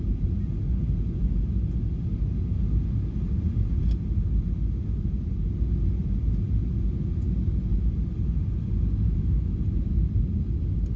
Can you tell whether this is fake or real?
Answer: real